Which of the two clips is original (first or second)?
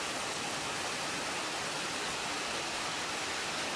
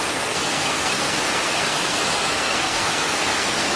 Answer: first